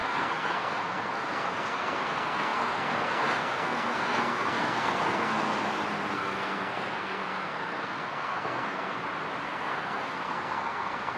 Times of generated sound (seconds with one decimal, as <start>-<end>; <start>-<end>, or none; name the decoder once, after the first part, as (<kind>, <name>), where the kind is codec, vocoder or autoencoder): 0.0-5.5 (codec, SNAC); 6.1-9.0; 9.5-11.2